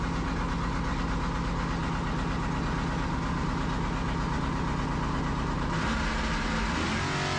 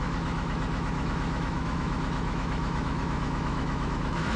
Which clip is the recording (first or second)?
first